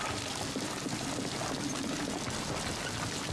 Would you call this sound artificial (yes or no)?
no